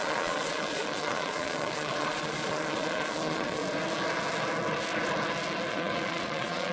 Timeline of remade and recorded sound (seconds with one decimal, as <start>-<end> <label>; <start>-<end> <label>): 0.0-3.6 remade; 3.6-5.7 recorded; 5.7-6.7 remade